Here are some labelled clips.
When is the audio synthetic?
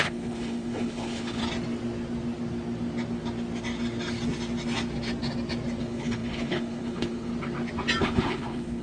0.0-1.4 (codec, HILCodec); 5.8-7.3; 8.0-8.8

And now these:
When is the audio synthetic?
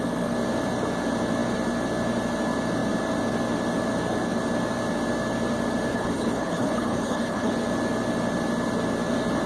5.9-7.5 (codec, HILCodec)